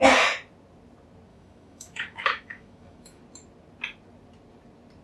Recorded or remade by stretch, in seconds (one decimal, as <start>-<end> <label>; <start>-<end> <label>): 0.0-1.3 recorded; 1.3-3.2 remade; 3.2-5.0 recorded